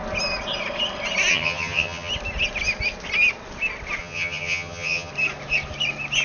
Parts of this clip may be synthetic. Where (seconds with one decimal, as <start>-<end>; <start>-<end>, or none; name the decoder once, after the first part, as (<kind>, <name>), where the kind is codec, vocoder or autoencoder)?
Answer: 1.3-2.1 (vocoder, HiFi-GAN); 4.0-5.1